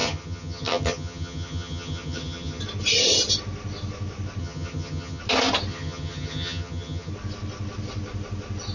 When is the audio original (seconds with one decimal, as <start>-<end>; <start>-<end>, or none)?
2.6-4.4; 5.2-5.7; 7.1-8.7